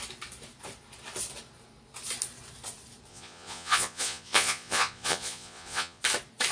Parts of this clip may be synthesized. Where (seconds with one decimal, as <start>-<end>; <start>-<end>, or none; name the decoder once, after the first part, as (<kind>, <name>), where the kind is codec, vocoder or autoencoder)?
3.1-6.0 (vocoder, Vocos)